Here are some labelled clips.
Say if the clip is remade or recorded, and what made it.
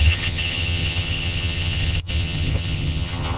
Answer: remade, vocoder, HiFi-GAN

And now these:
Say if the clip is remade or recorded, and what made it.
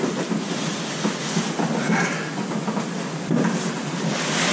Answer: recorded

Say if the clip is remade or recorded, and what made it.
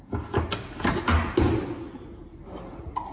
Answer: recorded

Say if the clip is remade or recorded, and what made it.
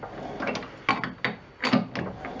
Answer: recorded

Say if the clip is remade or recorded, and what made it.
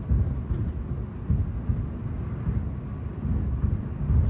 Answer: recorded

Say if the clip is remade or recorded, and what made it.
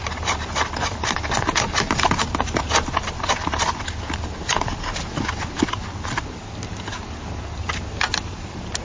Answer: recorded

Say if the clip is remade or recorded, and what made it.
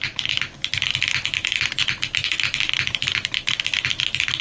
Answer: recorded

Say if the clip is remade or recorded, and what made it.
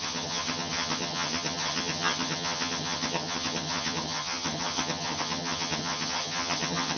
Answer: remade, vocoder, HiFi-GAN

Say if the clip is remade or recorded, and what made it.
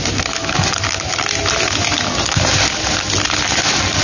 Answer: recorded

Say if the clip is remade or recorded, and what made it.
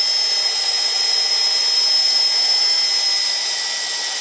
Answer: recorded